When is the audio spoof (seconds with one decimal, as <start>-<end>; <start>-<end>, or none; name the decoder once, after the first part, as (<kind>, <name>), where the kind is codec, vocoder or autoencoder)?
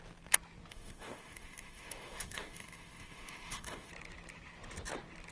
0.7-3.9 (autoencoder, DAC-VAE)